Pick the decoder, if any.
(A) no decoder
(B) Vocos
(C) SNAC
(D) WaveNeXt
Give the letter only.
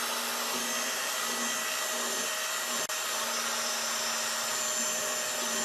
A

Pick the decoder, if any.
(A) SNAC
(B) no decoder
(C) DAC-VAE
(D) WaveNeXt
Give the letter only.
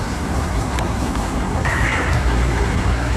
A